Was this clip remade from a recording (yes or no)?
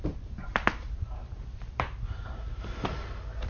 yes